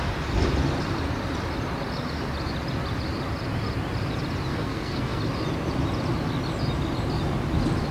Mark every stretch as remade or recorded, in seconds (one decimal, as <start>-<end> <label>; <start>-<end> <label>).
0.0-4.5 recorded; 4.5-5.2 remade; 5.2-7.9 recorded